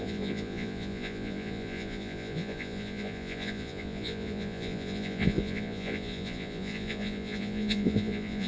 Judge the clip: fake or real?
fake